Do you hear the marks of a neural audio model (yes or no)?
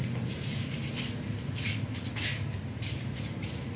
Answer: no